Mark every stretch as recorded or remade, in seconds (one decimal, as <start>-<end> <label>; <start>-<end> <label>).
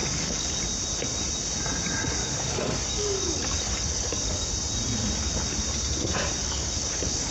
0.0-0.6 remade; 0.6-2.2 recorded; 2.2-4.5 remade; 4.5-6.4 recorded; 6.4-7.3 remade